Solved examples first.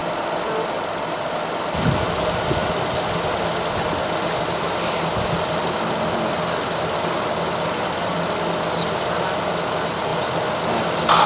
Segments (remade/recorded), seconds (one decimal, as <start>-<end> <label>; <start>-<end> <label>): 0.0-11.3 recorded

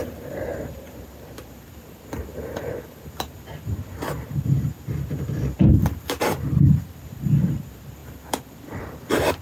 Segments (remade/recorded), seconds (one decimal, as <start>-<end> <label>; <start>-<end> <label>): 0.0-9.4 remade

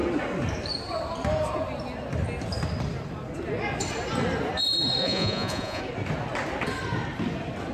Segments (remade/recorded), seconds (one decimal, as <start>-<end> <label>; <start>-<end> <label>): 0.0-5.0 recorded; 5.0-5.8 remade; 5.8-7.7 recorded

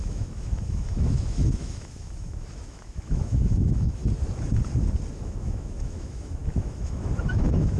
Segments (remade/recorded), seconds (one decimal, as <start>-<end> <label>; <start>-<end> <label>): 0.0-4.0 remade; 4.0-5.1 recorded; 5.1-7.8 remade

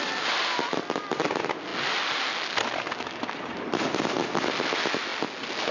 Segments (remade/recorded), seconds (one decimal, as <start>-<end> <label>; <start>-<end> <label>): 0.0-5.7 recorded